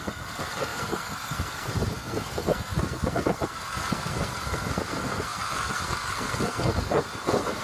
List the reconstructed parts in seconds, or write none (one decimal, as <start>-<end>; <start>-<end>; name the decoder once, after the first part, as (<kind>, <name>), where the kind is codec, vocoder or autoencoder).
0.0-7.6 (codec, SNAC)